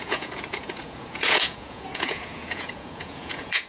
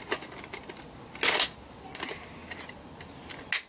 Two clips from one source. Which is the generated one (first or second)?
first